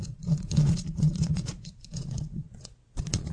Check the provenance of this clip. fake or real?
fake